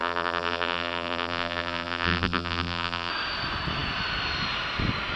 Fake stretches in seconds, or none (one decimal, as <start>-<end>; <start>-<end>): 0.0-3.1